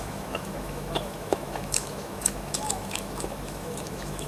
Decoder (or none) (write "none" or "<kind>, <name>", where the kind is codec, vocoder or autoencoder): autoencoder, DAC-VAE